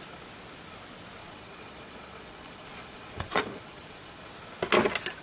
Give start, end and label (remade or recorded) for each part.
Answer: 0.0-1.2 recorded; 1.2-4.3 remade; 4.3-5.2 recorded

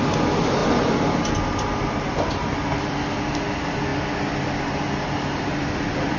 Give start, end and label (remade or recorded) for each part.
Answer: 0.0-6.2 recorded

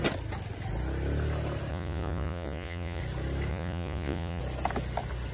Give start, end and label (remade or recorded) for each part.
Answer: 0.0-1.7 recorded; 1.7-3.0 remade; 3.0-3.5 recorded; 3.5-4.4 remade; 4.4-5.3 recorded

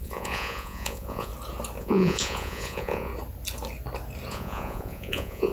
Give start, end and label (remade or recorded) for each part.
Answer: 0.0-1.3 remade; 1.3-1.8 recorded; 1.8-3.1 remade; 3.1-4.3 recorded; 4.3-5.5 remade

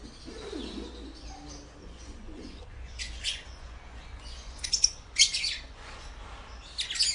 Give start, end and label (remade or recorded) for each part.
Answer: 0.0-1.8 recorded; 1.8-6.1 remade; 6.1-7.1 recorded